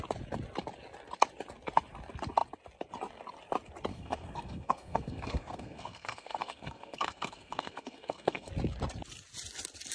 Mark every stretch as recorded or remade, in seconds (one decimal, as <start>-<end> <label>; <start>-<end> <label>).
0.0-3.9 recorded; 3.9-8.5 remade; 8.5-9.9 recorded